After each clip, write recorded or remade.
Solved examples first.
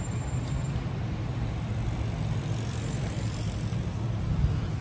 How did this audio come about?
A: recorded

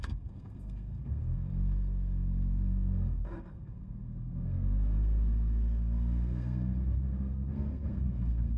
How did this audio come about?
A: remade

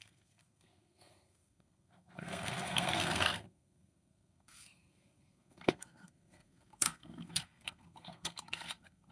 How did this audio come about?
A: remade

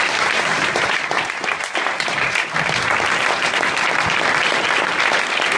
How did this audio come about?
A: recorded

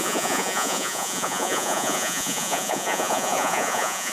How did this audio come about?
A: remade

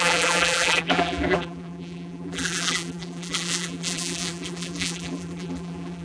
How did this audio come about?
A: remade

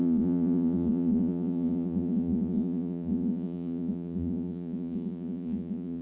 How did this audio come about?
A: remade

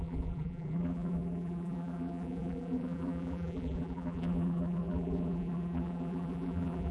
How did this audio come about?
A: remade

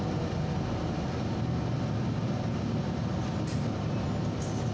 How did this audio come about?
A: recorded